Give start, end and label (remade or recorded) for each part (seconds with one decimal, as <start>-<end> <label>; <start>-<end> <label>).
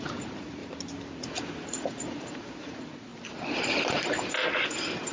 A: 0.0-0.6 remade; 0.6-1.1 recorded; 1.1-3.1 remade; 3.1-5.1 recorded